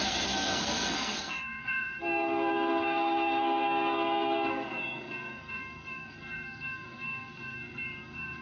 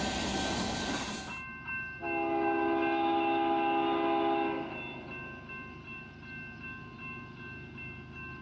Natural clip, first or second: second